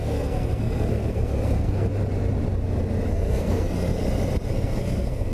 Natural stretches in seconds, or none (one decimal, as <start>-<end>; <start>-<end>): 1.9-3.1; 3.9-4.5